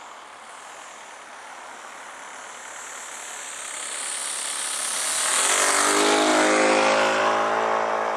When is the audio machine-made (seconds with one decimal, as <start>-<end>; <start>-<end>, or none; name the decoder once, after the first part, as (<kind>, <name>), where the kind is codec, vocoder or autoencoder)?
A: none